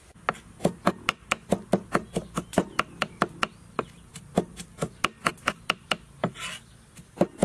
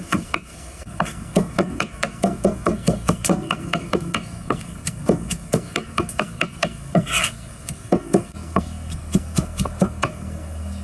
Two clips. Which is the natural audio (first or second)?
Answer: first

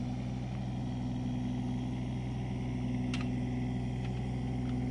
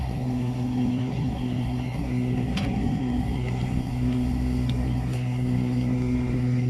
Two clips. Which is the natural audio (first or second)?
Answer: first